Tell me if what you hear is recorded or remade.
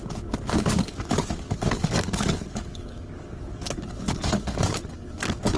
remade